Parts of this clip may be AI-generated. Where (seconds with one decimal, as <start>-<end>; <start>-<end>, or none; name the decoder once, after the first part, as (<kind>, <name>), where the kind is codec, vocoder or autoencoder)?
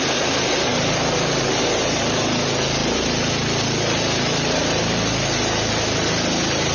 none